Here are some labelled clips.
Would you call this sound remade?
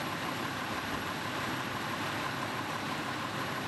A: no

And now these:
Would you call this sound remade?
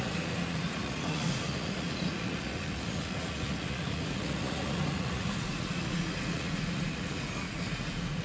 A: yes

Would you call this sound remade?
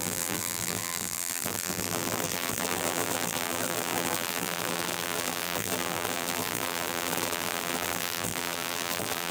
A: yes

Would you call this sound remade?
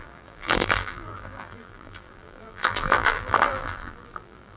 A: yes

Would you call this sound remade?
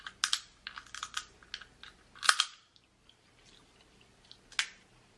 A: no